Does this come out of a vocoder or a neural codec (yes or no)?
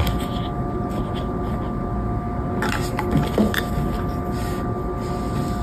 no